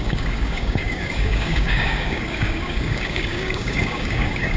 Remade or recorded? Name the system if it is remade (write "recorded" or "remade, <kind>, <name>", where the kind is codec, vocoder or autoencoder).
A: remade, codec, DAC